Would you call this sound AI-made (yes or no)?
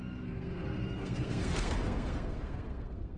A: yes